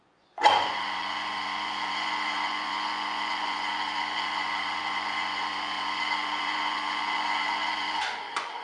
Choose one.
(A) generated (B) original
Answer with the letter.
A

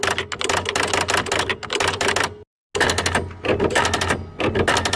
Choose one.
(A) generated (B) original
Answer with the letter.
B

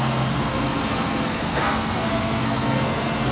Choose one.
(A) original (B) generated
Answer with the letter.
B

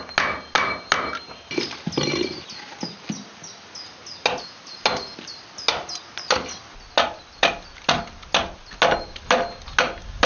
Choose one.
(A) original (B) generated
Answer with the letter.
A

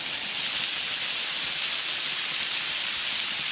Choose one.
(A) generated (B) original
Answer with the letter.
B